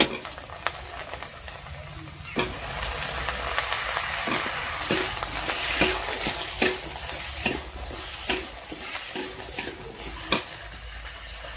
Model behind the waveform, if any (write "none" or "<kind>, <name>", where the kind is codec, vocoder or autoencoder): none